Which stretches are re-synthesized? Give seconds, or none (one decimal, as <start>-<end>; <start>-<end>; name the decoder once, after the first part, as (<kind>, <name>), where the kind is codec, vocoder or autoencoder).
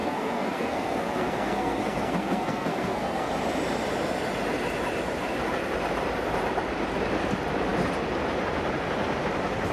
0.0-3.3 (codec, SNAC)